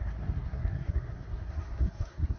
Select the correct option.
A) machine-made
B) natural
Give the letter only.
A